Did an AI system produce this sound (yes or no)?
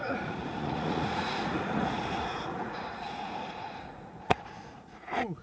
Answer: yes